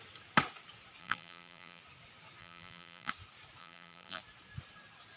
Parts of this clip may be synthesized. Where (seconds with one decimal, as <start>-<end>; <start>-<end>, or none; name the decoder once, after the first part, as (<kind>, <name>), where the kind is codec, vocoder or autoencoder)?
1.0-1.8 (vocoder, BigVGAN v2); 2.4-3.1; 3.6-4.2